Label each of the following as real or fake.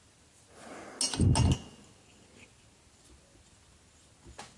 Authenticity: real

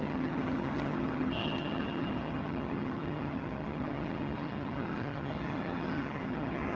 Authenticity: fake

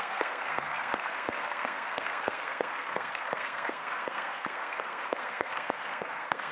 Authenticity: fake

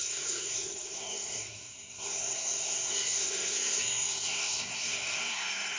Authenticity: fake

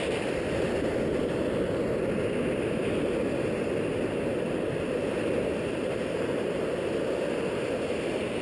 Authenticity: real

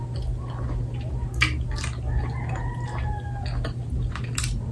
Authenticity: real